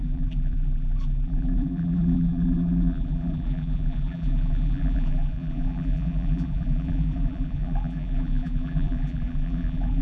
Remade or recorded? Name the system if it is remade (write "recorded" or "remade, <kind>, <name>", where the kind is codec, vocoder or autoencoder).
remade, vocoder, BigVGAN v2